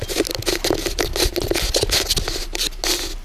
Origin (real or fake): real